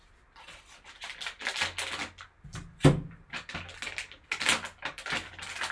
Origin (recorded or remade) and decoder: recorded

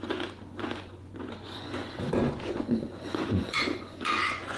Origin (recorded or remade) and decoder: remade, vocoder, Vocos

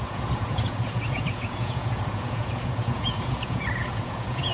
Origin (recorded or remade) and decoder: remade, vocoder, Vocos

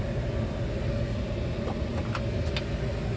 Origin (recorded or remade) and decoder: recorded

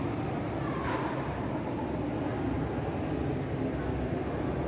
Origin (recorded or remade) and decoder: recorded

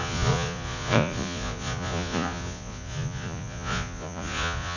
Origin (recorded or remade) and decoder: remade, vocoder, Vocos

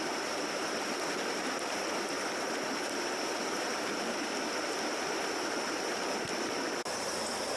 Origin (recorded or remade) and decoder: recorded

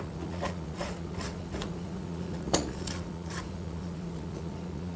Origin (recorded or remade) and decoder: remade, vocoder, Vocos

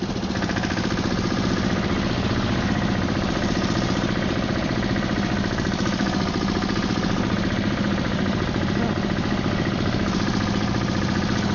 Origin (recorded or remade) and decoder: recorded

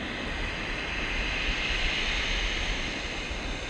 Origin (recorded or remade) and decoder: recorded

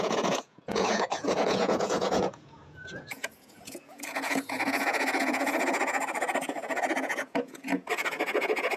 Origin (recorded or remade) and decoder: remade, vocoder, Vocos